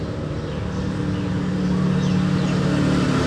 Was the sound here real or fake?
real